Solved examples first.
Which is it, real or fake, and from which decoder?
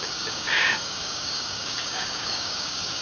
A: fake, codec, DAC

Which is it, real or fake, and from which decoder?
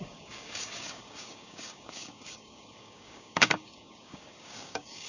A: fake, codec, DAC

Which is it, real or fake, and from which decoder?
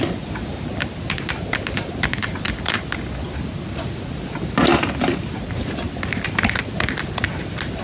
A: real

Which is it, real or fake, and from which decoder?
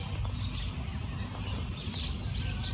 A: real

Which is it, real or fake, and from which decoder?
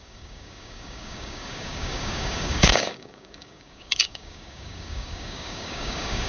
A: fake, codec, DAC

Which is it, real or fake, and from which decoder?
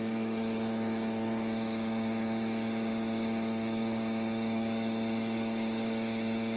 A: fake, codec, DAC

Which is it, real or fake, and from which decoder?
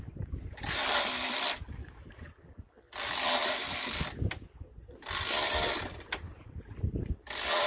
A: real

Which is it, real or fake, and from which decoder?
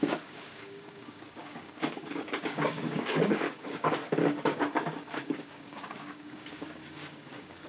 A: fake, codec, DAC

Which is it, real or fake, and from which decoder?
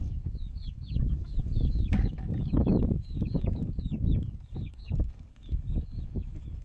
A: fake, codec, DAC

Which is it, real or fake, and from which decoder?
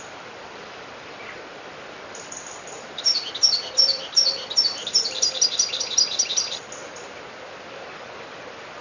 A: real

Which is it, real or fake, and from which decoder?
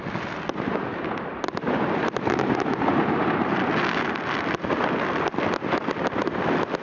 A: real